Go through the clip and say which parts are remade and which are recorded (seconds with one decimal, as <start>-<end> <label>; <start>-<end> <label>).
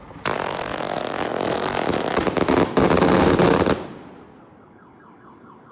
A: 0.0-5.7 recorded